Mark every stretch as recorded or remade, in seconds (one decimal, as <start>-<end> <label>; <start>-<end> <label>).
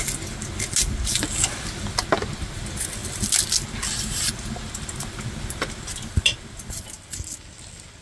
0.0-8.0 recorded